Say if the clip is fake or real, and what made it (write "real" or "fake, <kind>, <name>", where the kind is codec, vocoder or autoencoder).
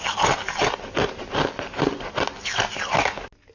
real